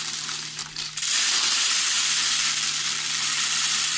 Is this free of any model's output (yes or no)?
no